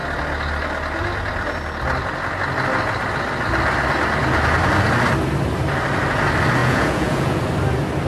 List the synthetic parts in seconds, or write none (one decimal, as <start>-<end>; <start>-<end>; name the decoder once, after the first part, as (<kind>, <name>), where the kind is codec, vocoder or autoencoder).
6.6-7.4 (vocoder, Vocos)